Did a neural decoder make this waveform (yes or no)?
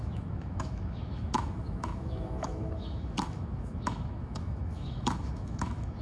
yes